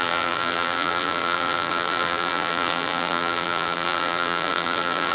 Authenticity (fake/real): fake